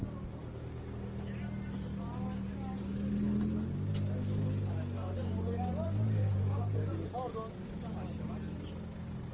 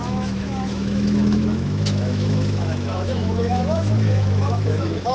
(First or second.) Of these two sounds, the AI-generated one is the second